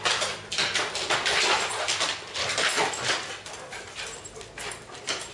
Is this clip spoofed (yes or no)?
no